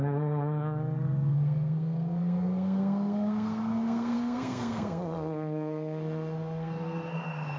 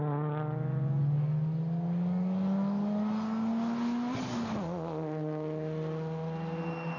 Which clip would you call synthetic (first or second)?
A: first